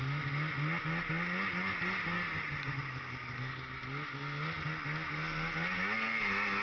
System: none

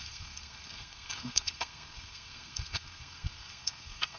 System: codec, SNAC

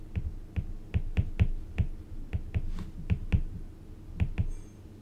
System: none